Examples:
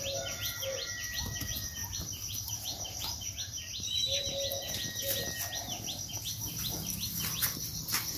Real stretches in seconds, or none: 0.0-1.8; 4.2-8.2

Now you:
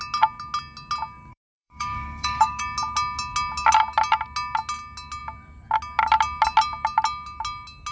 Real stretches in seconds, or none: 0.0-1.3; 2.6-7.9

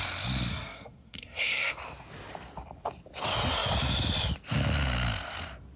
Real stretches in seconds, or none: 0.0-0.5; 1.7-5.8

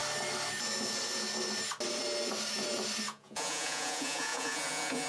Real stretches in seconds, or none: 0.0-3.1

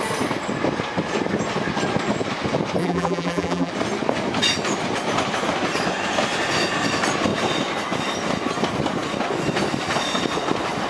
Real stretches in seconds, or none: 0.0-2.8; 3.7-10.9

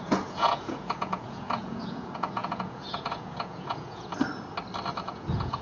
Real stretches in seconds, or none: 4.1-5.0

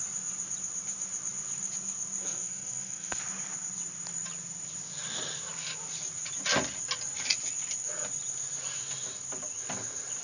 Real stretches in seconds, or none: 0.0-2.2; 3.2-10.2